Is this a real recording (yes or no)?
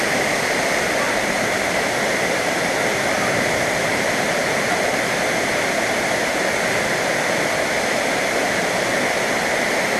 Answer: yes